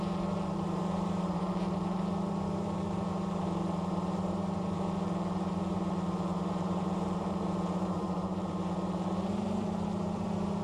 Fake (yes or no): yes